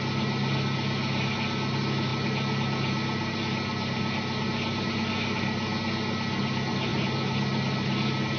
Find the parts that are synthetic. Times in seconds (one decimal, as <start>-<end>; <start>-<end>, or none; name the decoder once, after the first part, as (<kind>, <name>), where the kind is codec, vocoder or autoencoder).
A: none